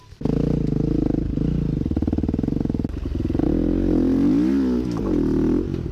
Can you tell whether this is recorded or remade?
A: recorded